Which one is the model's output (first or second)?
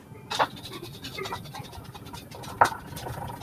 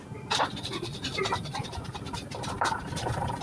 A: second